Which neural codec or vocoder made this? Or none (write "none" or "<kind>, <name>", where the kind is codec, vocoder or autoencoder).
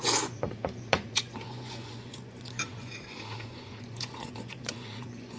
vocoder, Vocos